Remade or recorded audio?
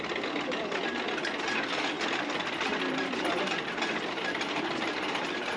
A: recorded